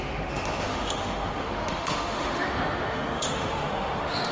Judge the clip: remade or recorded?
remade